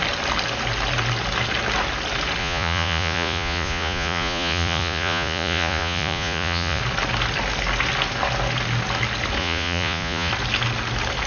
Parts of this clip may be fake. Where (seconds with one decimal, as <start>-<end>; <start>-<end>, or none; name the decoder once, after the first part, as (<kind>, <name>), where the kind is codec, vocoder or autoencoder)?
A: 2.4-6.8 (vocoder, Vocos); 9.4-10.3